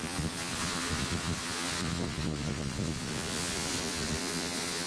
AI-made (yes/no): yes